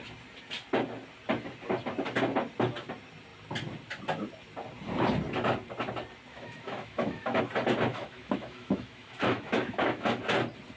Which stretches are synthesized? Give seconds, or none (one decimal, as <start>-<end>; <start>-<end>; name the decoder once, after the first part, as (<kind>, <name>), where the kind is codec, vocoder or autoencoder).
6.3-7.4 (autoencoder, DAC-VAE); 7.9-10.2